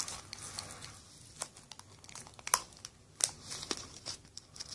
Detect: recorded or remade recorded